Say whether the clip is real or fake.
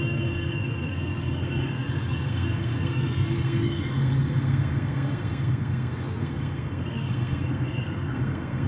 fake